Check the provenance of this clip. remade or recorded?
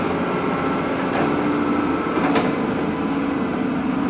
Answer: recorded